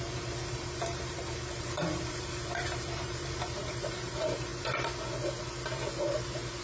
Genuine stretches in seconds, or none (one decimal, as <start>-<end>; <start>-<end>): 4.5-6.6